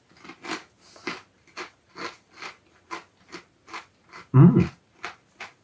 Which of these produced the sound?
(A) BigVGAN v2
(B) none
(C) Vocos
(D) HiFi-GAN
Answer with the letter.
B